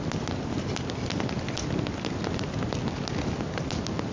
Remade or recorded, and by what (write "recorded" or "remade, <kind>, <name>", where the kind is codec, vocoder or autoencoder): recorded